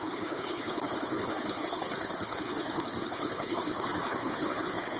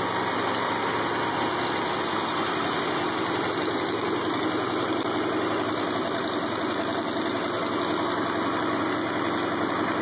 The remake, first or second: first